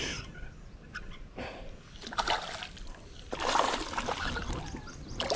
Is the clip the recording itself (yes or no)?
yes